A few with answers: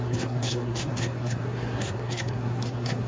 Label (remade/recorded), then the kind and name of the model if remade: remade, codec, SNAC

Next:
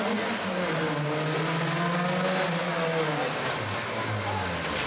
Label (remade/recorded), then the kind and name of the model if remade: recorded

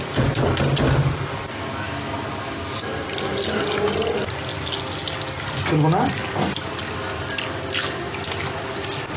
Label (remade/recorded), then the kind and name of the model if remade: recorded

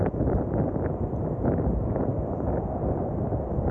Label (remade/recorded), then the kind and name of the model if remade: recorded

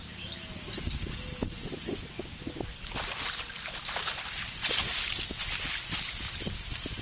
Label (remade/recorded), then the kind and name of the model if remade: recorded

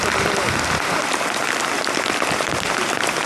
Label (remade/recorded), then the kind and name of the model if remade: recorded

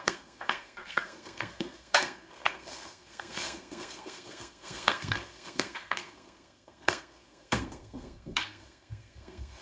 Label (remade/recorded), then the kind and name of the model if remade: remade, codec, SNAC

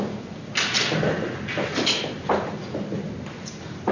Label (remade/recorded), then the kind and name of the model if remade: recorded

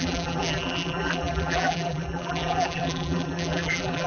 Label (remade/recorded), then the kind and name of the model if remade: remade, vocoder, BigVGAN v2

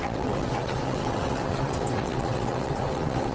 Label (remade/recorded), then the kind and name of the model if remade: remade, vocoder, WaveNeXt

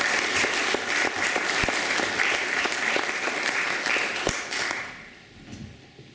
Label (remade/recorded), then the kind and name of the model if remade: recorded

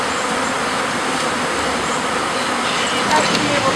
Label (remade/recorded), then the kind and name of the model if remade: recorded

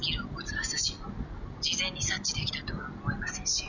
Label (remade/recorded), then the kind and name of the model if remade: recorded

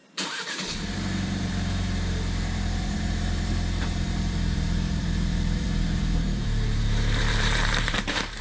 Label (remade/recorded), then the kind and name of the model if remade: remade, vocoder, BigVGAN v2